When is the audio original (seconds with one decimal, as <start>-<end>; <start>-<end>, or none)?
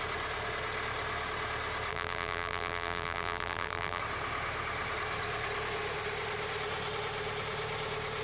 0.0-1.9; 4.0-8.2